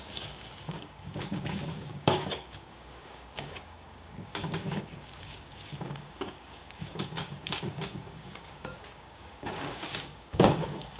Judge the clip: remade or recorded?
remade